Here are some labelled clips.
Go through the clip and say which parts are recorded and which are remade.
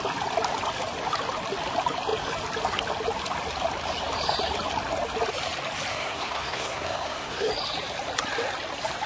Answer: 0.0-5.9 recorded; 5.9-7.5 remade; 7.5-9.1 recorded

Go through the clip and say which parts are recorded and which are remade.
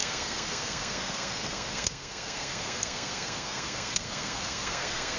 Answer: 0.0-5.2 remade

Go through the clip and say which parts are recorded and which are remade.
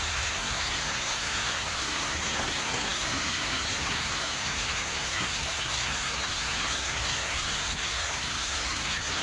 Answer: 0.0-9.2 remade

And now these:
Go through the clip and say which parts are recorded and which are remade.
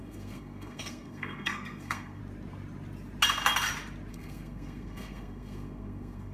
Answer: 0.0-2.2 remade; 2.2-4.1 recorded; 4.1-6.3 remade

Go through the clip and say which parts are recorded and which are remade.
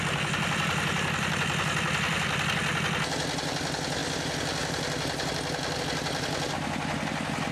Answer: 0.0-7.5 recorded